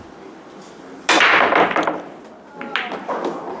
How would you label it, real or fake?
real